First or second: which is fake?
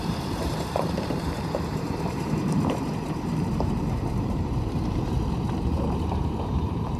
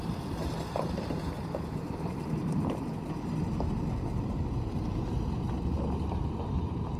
first